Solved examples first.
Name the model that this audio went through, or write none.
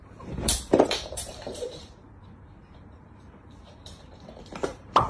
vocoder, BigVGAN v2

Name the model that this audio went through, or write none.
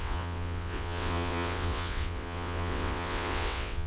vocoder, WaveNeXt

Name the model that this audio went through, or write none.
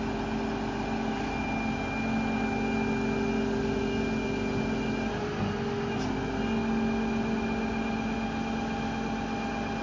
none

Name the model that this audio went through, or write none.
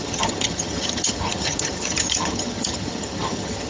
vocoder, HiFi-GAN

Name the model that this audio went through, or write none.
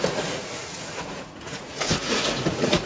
vocoder, Vocos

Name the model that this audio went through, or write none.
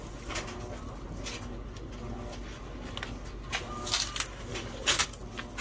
none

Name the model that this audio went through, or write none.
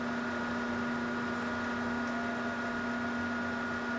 none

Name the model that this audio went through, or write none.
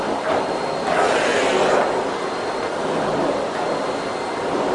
none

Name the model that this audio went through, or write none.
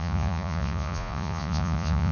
vocoder, Vocos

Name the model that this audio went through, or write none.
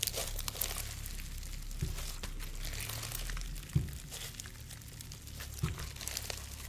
none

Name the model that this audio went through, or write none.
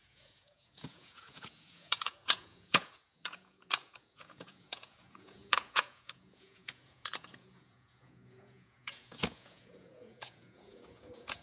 vocoder, Vocos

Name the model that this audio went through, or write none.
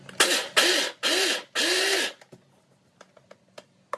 none